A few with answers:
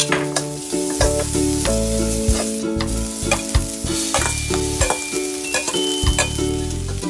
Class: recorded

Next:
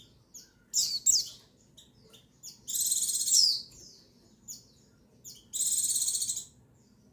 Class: recorded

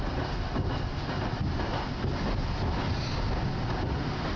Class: recorded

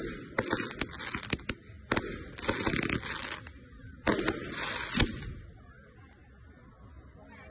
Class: recorded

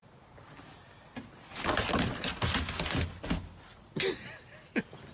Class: recorded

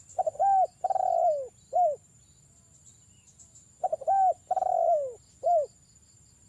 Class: recorded